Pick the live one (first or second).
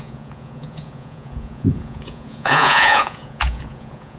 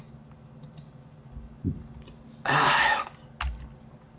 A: second